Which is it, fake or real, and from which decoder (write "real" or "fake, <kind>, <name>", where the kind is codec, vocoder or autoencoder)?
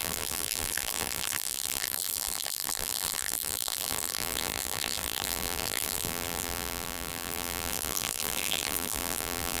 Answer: fake, vocoder, BigVGAN v2